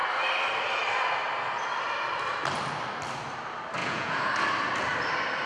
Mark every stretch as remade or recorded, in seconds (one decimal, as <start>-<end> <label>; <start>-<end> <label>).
0.0-3.8 recorded; 3.8-4.3 remade; 4.3-5.5 recorded